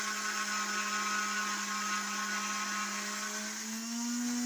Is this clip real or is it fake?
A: real